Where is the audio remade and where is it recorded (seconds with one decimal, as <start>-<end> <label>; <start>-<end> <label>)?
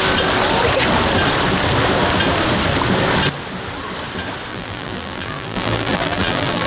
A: 0.0-4.5 recorded; 4.5-6.7 remade